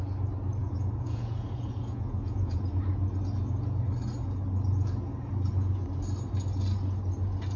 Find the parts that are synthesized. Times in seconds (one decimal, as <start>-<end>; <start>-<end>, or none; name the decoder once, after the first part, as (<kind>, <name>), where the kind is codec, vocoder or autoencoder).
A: 0.6-2.6 (vocoder, Vocos)

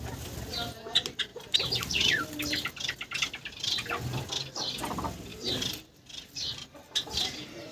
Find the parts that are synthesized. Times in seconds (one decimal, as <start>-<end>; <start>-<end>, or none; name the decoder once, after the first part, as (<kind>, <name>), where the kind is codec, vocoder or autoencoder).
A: 1.3-2.2 (vocoder, BigVGAN v2); 5.3-7.7

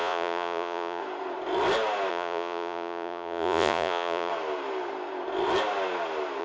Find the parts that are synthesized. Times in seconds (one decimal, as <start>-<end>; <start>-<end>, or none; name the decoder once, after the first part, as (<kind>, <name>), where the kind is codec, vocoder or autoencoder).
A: 0.0-1.0 (vocoder, Vocos); 2.1-4.3

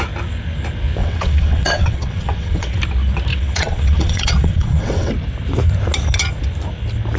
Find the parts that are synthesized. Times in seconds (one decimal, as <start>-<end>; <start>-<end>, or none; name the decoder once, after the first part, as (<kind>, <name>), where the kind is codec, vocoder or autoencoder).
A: 1.0-2.8 (vocoder, WaveNeXt); 3.3-5.1